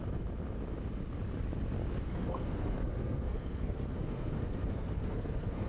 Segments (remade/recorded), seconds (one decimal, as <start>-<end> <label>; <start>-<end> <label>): 0.0-2.0 recorded; 2.0-5.7 remade